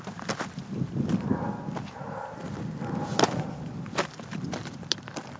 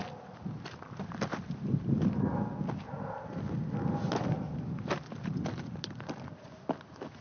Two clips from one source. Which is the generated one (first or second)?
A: first